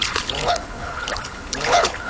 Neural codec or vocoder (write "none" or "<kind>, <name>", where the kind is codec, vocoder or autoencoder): codec, HILCodec